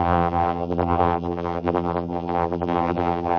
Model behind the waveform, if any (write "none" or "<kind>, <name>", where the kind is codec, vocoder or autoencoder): vocoder, BigVGAN v2